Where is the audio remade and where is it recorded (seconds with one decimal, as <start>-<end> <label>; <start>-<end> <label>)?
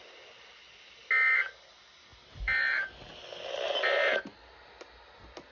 0.0-5.5 recorded